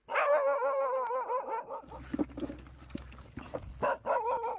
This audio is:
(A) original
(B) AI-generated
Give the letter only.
A